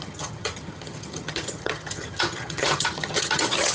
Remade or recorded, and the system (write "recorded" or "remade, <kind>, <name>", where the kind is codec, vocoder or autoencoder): remade, vocoder, HiFi-GAN